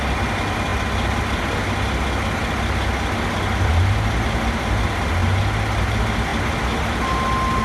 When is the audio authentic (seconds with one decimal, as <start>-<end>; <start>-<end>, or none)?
0.0-7.6